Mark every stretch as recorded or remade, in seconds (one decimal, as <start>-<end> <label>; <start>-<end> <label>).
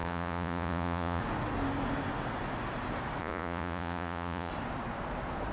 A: 0.0-1.2 remade; 1.2-3.2 recorded; 3.2-4.5 remade; 4.5-5.5 recorded